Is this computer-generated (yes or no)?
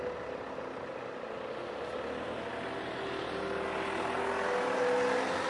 no